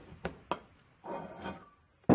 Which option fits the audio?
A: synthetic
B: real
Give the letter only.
B